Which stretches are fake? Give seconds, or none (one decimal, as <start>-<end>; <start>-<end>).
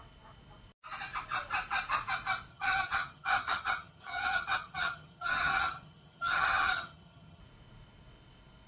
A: 2.5-7.4